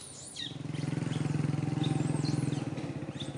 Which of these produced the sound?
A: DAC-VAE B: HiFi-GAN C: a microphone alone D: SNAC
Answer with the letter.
C